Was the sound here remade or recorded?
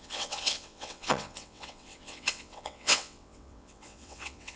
remade